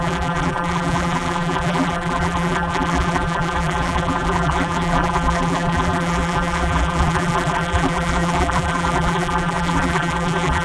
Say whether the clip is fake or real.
fake